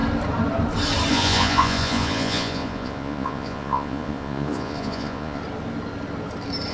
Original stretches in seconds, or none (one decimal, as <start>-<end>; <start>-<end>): 0.0-1.1; 5.4-6.7